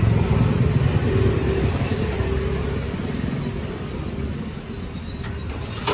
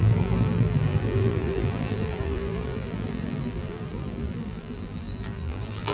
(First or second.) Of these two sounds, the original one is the first